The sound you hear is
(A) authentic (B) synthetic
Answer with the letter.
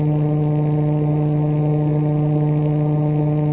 A